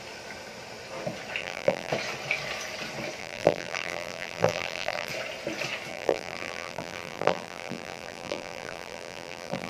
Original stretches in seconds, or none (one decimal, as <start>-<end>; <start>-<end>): 0.0-1.4; 1.9-3.2; 5.1-5.9